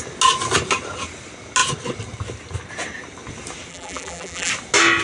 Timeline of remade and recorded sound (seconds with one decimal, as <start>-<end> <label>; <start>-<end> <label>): 0.0-3.7 recorded; 3.7-4.5 remade; 4.5-5.0 recorded